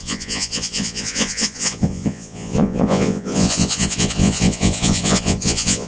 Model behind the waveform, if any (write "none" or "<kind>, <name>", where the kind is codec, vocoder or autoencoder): vocoder, Vocos